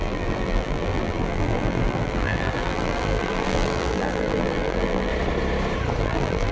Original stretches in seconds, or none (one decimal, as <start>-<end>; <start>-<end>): 5.1-6.0